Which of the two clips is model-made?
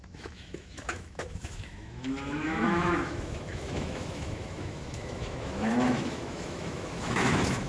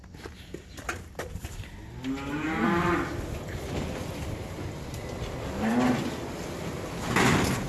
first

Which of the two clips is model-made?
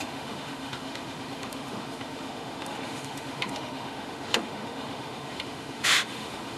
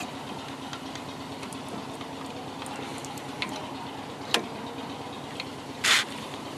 first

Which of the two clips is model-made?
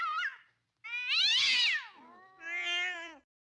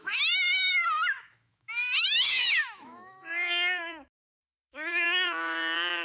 second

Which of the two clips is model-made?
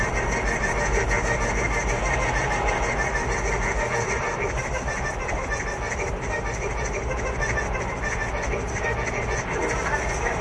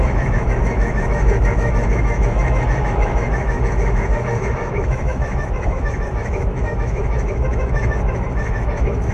second